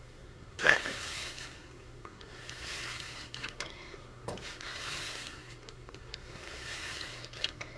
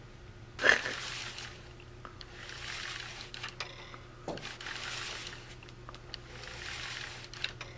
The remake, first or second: first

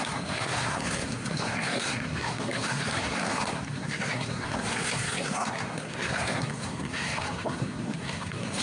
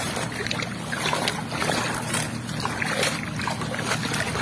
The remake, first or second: first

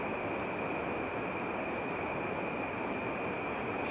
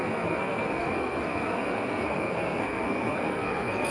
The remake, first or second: second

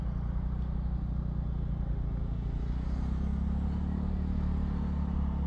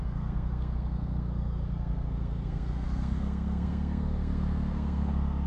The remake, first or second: second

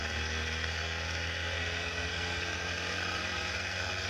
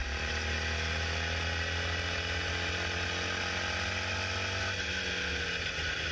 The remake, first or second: first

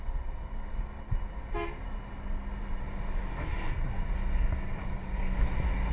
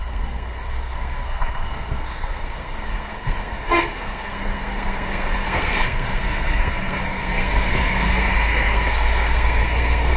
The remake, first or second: second